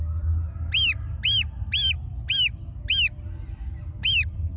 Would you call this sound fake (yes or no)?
no